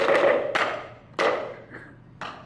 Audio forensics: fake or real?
real